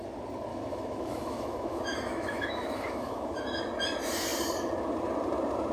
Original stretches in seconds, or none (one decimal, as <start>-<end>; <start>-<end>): 0.0-0.5; 3.4-5.7